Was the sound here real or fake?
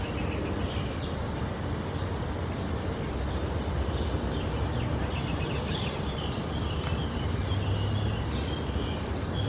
real